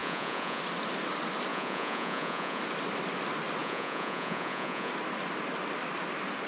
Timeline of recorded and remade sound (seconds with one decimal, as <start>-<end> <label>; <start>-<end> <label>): 0.0-0.6 remade; 0.6-1.5 recorded; 1.5-2.6 remade; 2.6-3.6 recorded; 3.6-4.9 remade; 4.9-6.5 recorded